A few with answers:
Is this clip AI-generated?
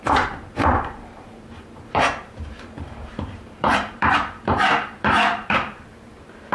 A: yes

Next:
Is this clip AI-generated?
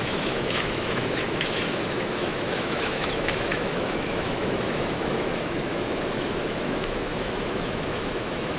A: yes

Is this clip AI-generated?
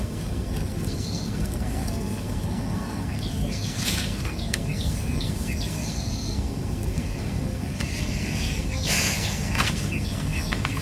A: yes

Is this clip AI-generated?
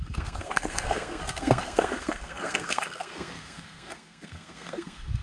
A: yes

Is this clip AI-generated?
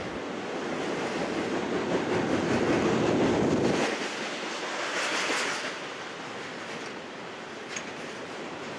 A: no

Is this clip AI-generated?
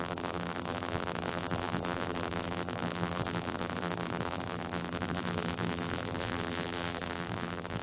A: yes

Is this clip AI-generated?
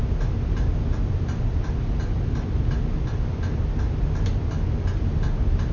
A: no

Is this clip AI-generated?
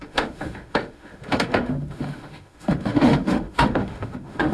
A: yes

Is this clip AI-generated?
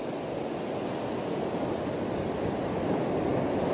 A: no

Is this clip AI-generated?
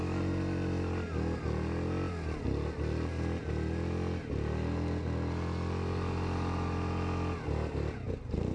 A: no